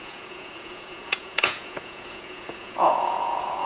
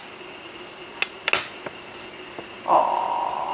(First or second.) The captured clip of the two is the second